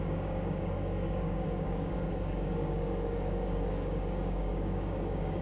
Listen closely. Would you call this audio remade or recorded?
remade